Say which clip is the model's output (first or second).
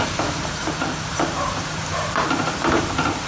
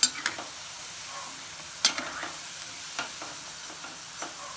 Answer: first